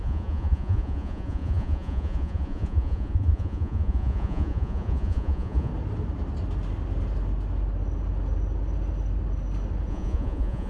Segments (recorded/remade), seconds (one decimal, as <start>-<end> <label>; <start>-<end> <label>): 0.0-5.7 remade; 5.7-9.9 recorded; 9.9-10.7 remade